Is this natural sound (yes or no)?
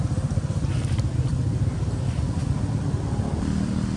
yes